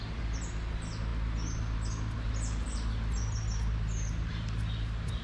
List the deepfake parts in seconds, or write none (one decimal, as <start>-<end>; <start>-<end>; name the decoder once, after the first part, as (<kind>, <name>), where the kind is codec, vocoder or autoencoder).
none